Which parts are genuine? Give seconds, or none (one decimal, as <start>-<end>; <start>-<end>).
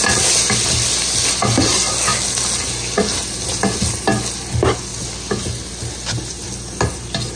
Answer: 0.0-7.4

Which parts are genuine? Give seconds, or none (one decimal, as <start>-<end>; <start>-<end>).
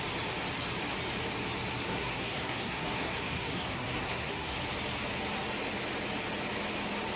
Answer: 0.0-1.9; 4.6-7.2